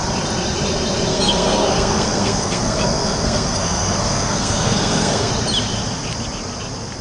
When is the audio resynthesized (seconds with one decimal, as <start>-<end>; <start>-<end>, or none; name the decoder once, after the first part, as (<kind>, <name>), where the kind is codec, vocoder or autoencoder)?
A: 1.1-5.3 (codec, SNAC)